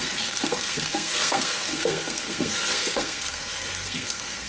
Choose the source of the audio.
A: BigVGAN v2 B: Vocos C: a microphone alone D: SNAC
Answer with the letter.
D